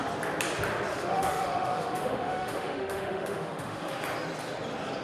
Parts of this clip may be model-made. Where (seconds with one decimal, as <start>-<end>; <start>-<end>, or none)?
0.9-3.9